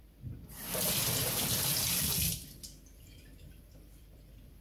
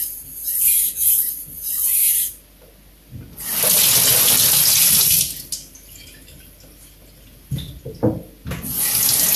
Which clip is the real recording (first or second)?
second